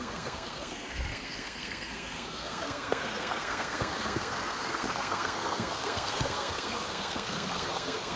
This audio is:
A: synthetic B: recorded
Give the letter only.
A